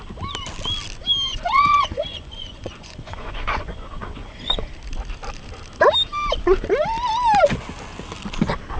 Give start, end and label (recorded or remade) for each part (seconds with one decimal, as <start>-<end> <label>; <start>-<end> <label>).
0.0-1.3 recorded; 1.3-4.7 remade; 4.7-8.8 recorded